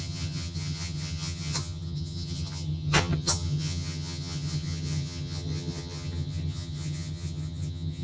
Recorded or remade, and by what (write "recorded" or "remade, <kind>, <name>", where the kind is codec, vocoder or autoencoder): remade, vocoder, HiFi-GAN